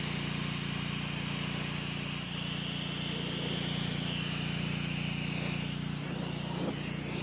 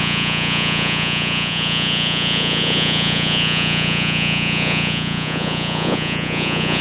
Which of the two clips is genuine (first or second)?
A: first